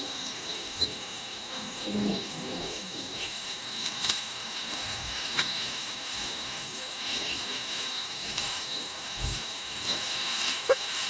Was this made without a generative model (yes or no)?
no